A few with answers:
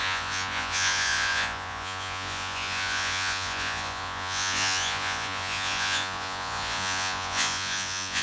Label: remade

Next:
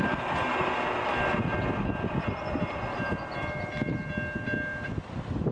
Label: recorded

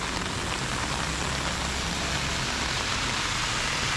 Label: recorded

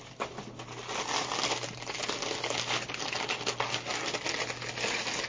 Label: recorded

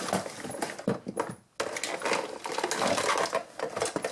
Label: recorded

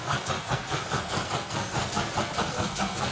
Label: remade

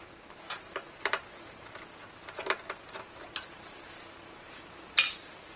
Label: remade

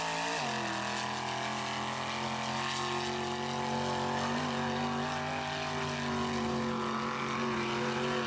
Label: recorded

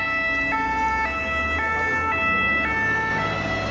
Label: recorded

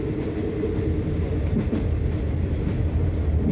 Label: recorded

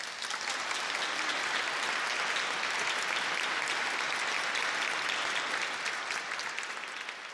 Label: recorded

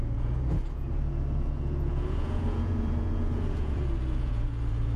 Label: remade